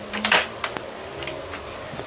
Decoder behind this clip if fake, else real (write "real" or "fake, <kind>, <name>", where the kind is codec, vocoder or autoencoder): real